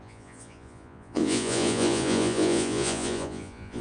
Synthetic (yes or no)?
yes